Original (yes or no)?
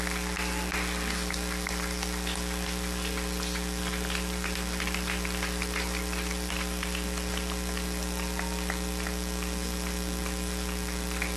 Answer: yes